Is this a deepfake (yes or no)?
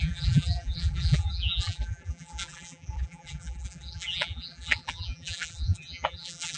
yes